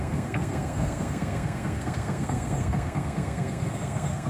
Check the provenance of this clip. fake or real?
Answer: fake